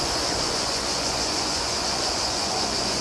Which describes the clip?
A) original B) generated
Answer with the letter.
B